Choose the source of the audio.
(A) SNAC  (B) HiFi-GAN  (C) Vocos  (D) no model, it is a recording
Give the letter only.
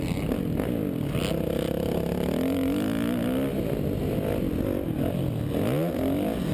D